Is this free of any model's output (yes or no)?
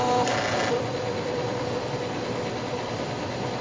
yes